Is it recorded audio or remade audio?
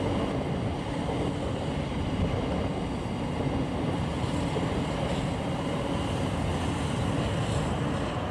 recorded